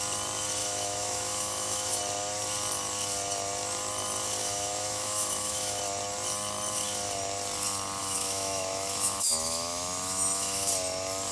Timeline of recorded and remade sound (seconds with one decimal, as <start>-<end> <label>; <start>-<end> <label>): 0.0-0.6 recorded; 0.6-2.0 remade; 2.0-4.4 recorded; 4.4-5.8 remade; 5.8-8.0 recorded; 8.0-10.7 remade; 10.7-11.3 recorded